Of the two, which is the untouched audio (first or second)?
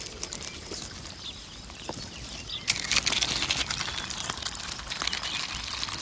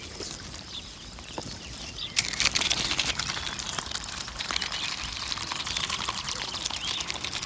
first